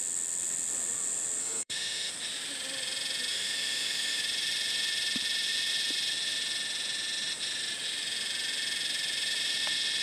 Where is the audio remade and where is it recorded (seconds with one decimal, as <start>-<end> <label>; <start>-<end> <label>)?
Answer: 0.0-1.4 recorded; 1.4-2.1 remade; 2.1-3.3 recorded; 3.3-4.2 remade; 4.2-10.0 recorded